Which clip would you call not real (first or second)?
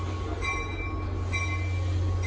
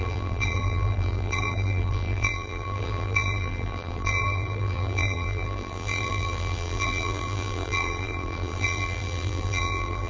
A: second